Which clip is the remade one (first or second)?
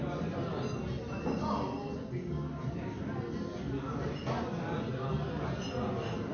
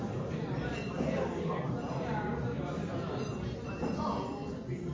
second